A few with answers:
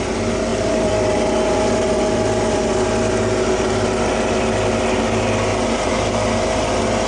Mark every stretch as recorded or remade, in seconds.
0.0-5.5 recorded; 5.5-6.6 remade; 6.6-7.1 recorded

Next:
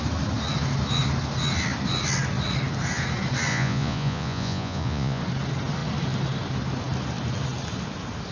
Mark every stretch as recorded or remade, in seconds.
0.0-3.5 recorded; 3.5-5.2 remade; 5.2-8.3 recorded

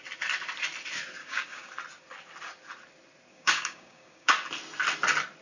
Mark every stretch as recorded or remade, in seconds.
0.0-1.2 recorded; 1.2-1.7 remade; 1.7-3.3 recorded; 3.3-4.3 remade; 4.3-5.4 recorded

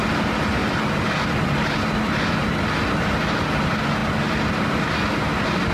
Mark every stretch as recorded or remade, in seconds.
0.0-5.7 recorded

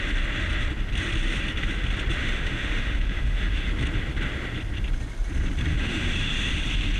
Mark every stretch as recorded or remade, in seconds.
0.0-2.2 recorded; 2.2-3.7 remade; 3.7-5.7 recorded; 5.7-6.5 remade; 6.5-7.0 recorded

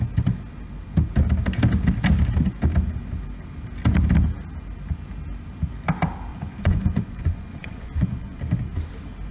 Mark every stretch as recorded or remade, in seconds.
0.0-6.3 recorded; 6.3-8.4 remade; 8.4-9.3 recorded

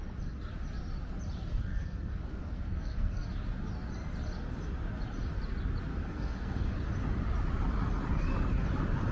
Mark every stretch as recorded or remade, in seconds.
0.0-1.5 recorded; 1.5-3.3 remade; 3.3-5.9 recorded; 5.9-6.7 remade; 6.7-9.1 recorded